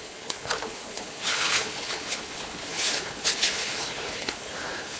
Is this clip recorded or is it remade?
remade